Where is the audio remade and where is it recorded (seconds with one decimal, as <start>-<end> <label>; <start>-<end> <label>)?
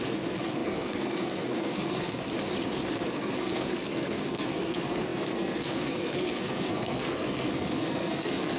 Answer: 0.0-2.2 remade; 2.2-2.9 recorded; 2.9-8.6 remade